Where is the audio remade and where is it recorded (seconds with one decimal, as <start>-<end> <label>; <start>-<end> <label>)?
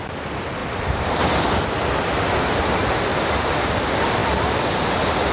0.0-0.6 recorded; 0.6-1.4 remade; 1.4-3.1 recorded; 3.1-3.7 remade; 3.7-5.3 recorded